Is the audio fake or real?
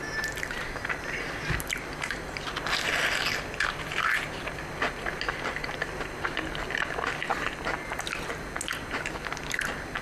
real